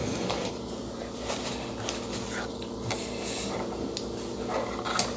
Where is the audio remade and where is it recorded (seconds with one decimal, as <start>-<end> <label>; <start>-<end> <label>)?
0.0-1.5 remade; 1.5-5.2 recorded